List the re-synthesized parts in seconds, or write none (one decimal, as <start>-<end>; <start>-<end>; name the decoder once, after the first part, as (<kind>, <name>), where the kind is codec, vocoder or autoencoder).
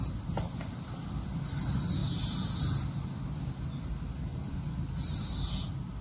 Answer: 4.3-5.3 (vocoder, BigVGAN v2)